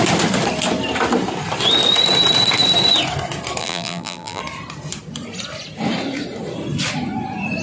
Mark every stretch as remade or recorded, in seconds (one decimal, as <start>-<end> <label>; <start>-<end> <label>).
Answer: 0.0-3.6 recorded; 3.6-4.4 remade; 4.4-7.6 recorded